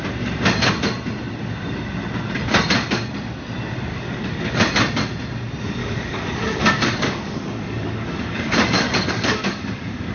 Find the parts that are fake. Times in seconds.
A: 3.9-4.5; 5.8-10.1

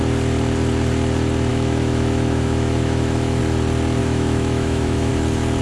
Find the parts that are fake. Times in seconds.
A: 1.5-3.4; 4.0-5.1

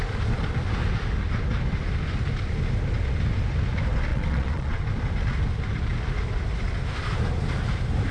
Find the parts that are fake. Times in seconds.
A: 4.1-4.8

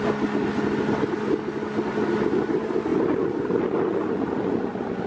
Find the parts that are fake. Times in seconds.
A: none